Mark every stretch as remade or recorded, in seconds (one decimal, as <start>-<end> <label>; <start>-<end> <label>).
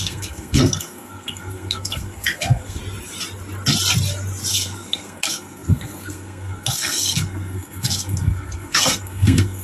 0.0-2.8 remade; 2.8-4.5 recorded; 4.5-9.6 remade